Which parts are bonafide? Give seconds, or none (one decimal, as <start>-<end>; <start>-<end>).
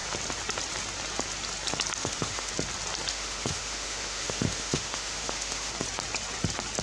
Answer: 0.0-2.0; 2.5-3.1; 5.7-6.8